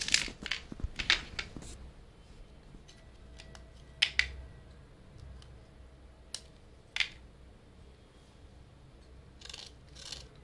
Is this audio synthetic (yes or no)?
no